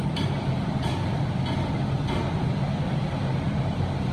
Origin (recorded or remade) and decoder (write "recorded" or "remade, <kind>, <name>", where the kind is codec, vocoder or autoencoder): recorded